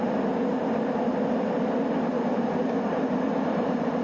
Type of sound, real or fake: real